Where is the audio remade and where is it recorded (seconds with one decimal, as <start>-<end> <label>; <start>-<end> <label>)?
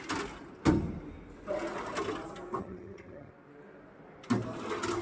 0.0-2.6 recorded; 2.6-3.3 remade; 3.3-5.0 recorded